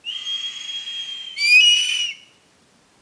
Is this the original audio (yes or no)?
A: yes